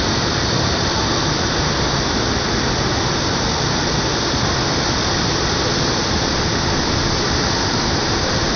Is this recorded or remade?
recorded